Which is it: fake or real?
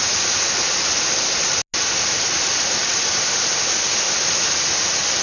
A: real